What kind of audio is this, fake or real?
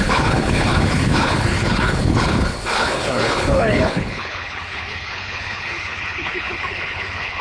fake